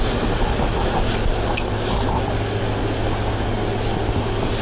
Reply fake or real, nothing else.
real